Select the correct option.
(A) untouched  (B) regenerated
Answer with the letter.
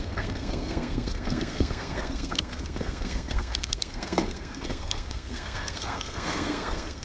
B